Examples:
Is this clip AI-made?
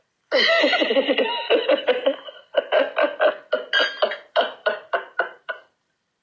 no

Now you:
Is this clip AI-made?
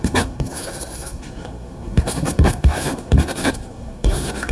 yes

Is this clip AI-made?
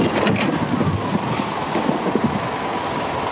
no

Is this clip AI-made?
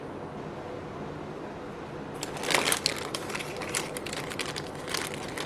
no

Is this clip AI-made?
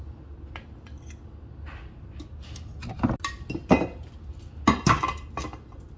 no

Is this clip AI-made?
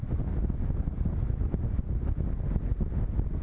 no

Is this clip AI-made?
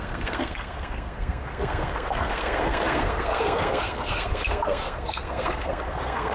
yes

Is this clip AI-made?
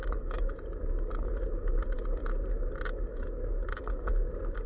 no